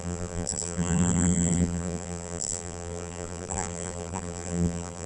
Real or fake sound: fake